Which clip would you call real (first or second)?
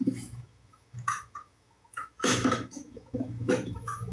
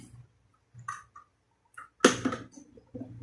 second